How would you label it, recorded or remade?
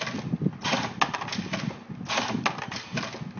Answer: recorded